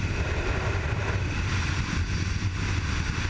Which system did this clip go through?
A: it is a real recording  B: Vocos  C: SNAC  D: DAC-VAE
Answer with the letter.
A